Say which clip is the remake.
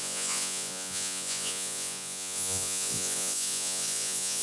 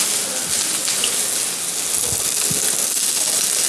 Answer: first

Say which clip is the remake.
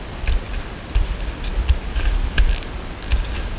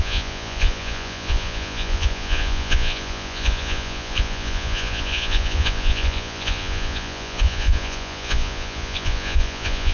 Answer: second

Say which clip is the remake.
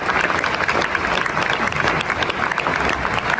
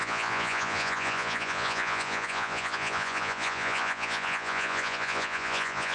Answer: second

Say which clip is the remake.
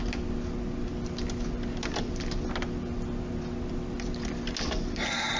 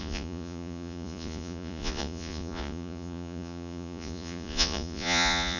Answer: second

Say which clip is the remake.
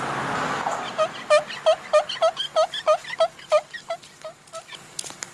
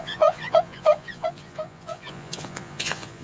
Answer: second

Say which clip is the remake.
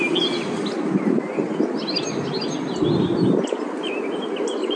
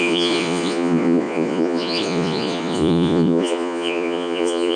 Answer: second